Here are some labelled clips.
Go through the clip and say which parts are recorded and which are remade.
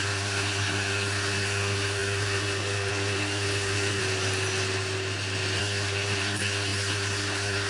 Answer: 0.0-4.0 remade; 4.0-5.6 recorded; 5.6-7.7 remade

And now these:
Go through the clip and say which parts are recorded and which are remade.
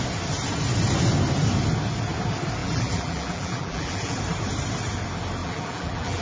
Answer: 0.0-2.6 recorded; 2.6-4.2 remade; 4.2-5.4 recorded; 5.4-6.2 remade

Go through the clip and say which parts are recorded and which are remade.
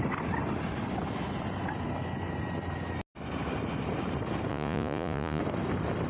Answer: 0.0-4.5 recorded; 4.5-5.4 remade; 5.4-6.1 recorded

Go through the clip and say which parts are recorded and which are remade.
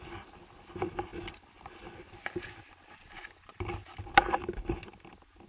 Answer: 0.0-5.5 recorded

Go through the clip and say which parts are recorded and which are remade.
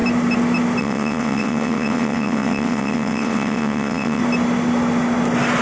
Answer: 0.0-0.8 recorded; 0.8-4.2 remade; 4.2-5.6 recorded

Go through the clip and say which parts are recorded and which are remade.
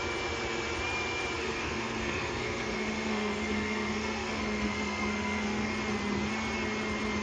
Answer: 0.0-1.4 recorded; 1.4-5.7 remade; 5.7-7.2 recorded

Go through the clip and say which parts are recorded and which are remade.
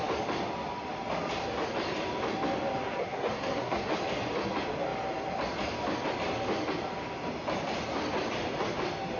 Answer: 0.0-3.0 recorded; 3.0-3.9 remade; 3.9-9.2 recorded